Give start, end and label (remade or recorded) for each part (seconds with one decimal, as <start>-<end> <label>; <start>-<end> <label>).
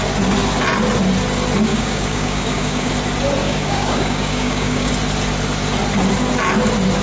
0.0-1.7 recorded; 1.7-2.9 remade; 2.9-3.4 recorded; 3.4-4.9 remade; 4.9-7.0 recorded